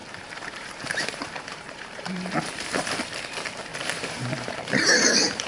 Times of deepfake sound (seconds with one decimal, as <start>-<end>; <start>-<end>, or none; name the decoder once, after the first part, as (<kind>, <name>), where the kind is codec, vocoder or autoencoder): 0.0-2.9 (vocoder, BigVGAN v2); 3.7-5.5